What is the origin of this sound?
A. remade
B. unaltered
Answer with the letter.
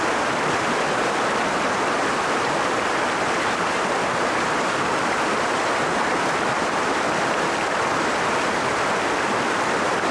B